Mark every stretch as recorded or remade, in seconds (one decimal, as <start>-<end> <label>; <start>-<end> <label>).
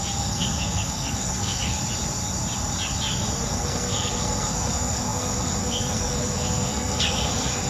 0.0-1.8 remade; 1.8-3.5 recorded; 3.5-7.7 remade